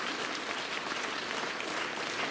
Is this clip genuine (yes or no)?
yes